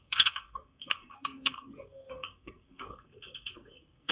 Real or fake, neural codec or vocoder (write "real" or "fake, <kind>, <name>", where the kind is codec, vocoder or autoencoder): fake, codec, SNAC